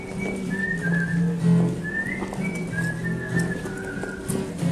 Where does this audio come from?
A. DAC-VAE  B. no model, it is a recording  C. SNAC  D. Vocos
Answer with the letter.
B